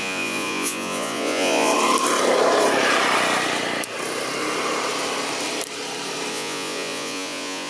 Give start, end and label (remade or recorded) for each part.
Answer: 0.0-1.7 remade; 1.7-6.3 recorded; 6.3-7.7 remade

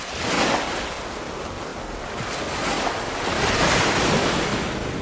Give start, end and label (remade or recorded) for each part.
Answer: 0.0-5.0 recorded

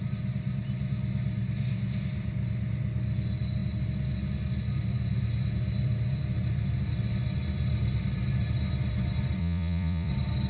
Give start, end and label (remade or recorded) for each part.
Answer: 0.0-9.4 recorded; 9.4-10.1 remade; 10.1-10.5 recorded

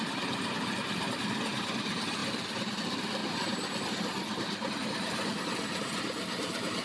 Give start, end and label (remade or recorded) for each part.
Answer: 0.0-2.2 remade; 2.2-2.8 recorded; 2.8-3.2 remade; 3.2-4.7 recorded; 4.7-6.8 remade